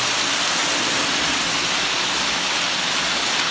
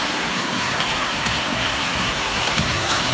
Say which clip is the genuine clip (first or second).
first